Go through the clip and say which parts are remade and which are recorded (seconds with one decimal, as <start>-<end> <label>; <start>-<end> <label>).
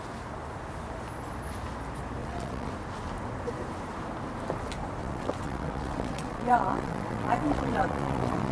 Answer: 0.0-2.2 recorded; 2.2-2.7 remade; 2.7-5.0 recorded; 5.0-8.5 remade